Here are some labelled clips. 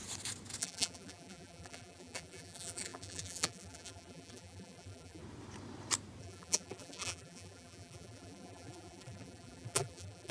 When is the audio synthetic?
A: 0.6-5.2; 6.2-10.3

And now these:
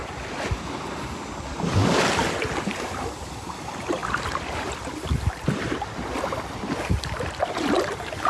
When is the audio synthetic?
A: 1.4-1.8; 2.6-8.3

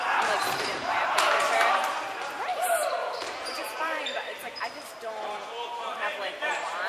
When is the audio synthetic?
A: 0.0-6.9

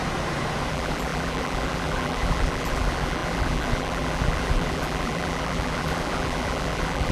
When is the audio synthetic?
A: 0.7-7.1

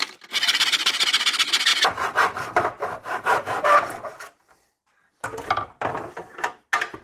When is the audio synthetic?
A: none

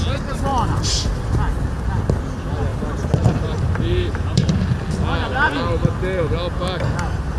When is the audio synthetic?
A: 0.5-1.3; 2.7-4.5